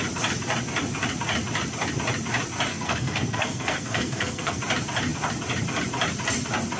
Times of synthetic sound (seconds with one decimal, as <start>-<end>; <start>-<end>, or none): 2.7-4.6